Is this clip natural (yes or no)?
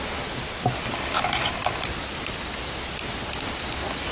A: yes